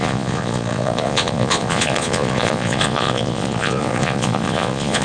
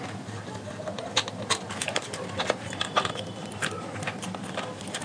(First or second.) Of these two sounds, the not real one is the first